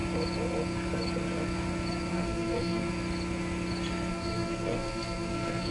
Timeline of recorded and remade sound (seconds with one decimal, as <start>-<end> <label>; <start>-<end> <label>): 0.0-2.1 recorded; 2.1-2.9 remade; 2.9-4.1 recorded; 4.1-5.7 remade